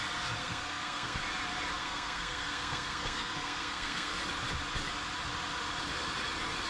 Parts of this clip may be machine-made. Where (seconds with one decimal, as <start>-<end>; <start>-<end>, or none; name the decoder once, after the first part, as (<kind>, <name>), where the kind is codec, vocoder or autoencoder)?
0.4-1.2 (codec, SNAC); 1.8-4.2